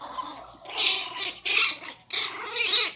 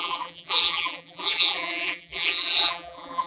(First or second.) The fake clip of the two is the second